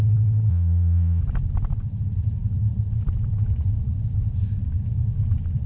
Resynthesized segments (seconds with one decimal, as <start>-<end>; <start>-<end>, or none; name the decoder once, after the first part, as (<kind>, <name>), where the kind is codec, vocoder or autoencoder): 0.5-1.2 (vocoder, Vocos)